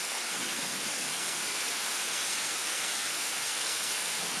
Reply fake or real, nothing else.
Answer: fake